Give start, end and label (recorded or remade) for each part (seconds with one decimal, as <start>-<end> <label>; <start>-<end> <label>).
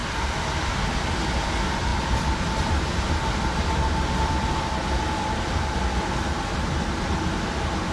0.0-7.9 recorded